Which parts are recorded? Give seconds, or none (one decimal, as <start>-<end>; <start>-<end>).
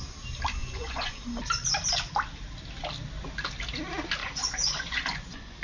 0.0-0.6; 1.2-4.2